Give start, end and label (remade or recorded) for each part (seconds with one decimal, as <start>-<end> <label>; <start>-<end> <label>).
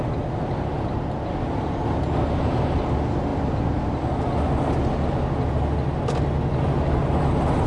0.0-7.7 recorded